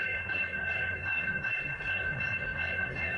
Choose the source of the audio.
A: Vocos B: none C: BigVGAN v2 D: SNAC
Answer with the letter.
D